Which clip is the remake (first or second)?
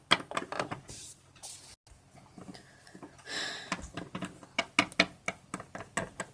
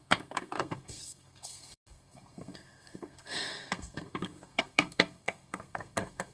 second